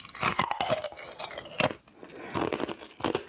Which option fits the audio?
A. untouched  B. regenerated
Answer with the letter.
A